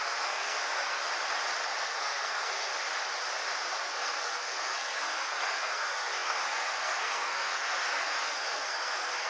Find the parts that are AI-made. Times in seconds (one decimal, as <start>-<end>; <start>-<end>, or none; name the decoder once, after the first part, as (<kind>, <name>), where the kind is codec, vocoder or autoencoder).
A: 0.0-1.0 (codec, SNAC); 1.8-2.7; 3.8-9.3

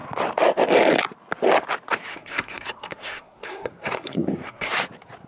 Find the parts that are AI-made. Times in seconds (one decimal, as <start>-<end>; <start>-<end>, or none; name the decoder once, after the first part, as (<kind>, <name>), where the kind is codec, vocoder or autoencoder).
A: 2.1-4.7 (codec, SNAC)

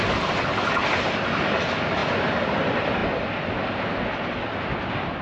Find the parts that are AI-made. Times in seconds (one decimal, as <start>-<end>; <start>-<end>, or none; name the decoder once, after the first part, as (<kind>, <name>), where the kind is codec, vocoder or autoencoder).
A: none

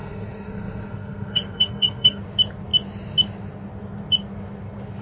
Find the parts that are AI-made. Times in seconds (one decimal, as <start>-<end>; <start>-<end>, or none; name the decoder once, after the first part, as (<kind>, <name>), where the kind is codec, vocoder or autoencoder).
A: 0.0-2.2 (codec, SNAC)

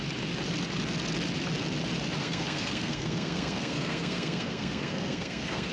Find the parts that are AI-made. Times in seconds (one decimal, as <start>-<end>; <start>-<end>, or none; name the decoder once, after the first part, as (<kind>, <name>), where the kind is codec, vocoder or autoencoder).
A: 2.2-5.7 (codec, SNAC)

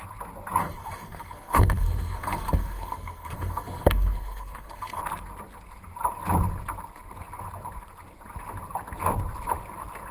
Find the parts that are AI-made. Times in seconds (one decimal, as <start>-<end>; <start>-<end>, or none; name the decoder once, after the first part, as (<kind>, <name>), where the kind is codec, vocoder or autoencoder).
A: 0.6-5.0 (codec, SNAC)